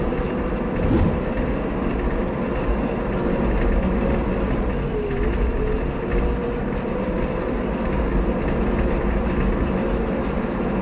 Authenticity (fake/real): real